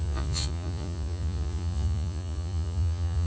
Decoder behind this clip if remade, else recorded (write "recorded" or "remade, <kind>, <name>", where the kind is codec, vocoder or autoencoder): remade, vocoder, Vocos